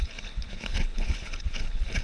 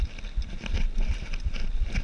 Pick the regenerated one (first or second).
first